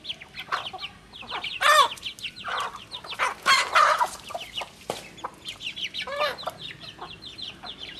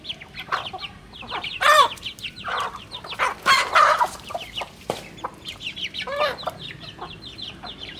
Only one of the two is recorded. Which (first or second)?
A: first